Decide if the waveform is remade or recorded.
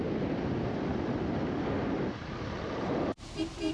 recorded